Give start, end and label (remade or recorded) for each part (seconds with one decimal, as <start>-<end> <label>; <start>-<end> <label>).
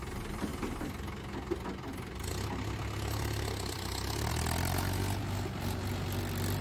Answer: 0.0-6.6 recorded